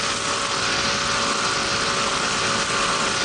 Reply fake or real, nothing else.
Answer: real